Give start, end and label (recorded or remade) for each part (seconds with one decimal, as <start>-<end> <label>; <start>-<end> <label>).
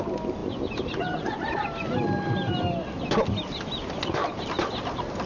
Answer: 0.0-5.3 recorded